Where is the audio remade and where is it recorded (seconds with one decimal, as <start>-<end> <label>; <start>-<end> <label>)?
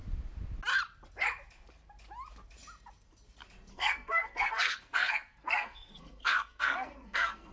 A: 0.0-3.7 recorded; 3.7-7.5 remade